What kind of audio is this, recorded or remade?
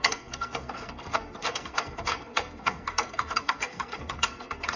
remade